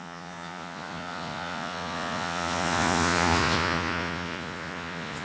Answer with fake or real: fake